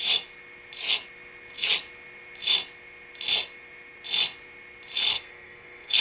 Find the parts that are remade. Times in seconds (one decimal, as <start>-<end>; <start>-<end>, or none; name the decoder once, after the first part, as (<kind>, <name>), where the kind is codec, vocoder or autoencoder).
5.1-6.0 (codec, SNAC)